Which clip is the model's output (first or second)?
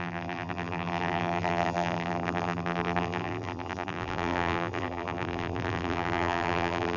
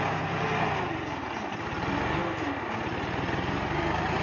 first